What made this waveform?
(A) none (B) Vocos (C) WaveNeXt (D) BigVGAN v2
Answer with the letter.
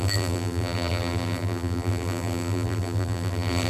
D